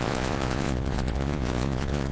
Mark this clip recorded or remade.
remade